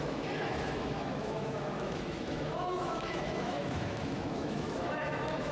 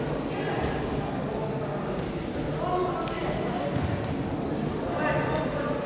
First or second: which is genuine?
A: second